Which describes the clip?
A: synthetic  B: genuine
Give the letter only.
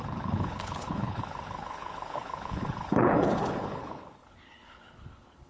A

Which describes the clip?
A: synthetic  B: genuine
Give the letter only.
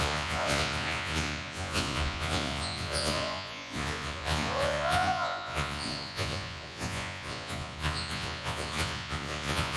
A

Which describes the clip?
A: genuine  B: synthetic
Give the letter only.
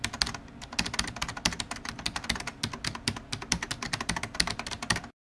A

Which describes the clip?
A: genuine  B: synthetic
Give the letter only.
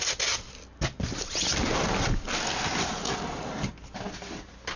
A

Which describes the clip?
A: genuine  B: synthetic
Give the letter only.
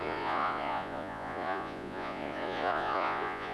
B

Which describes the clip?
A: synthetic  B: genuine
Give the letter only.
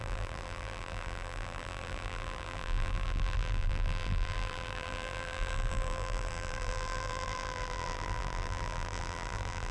A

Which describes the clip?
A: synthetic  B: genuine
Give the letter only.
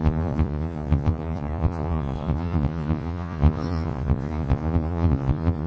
A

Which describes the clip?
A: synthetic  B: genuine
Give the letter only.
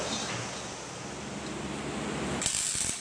B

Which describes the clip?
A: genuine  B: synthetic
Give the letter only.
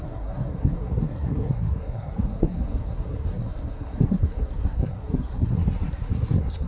B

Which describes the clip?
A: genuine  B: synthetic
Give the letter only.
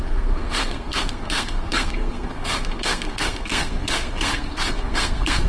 B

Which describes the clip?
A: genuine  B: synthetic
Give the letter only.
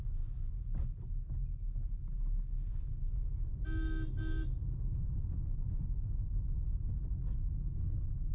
A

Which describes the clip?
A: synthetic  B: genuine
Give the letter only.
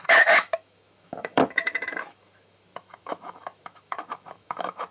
A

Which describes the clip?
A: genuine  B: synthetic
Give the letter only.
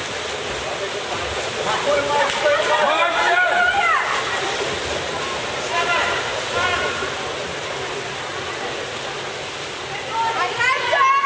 A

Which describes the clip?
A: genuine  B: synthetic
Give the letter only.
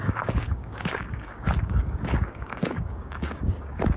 B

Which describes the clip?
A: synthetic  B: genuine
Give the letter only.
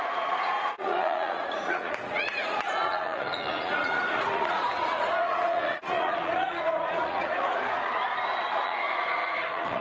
A